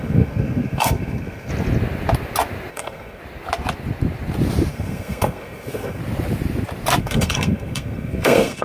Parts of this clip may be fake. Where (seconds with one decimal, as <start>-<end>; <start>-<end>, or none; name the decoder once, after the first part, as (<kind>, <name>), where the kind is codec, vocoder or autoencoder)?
0.0-1.5 (codec, SNAC); 2.7-3.2; 4.7-6.0; 7.0-8.6